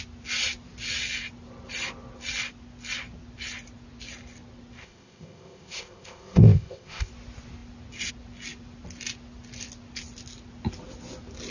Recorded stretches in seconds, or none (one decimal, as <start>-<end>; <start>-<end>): 0.0-4.8; 7.1-11.5